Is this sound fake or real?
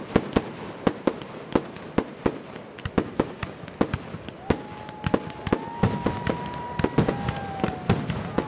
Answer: real